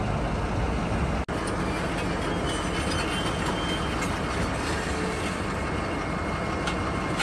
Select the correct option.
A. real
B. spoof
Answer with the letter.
A